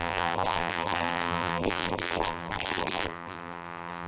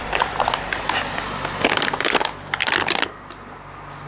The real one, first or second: second